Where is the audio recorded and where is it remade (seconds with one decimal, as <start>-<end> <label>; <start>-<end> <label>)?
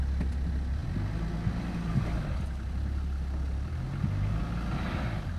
0.0-5.4 recorded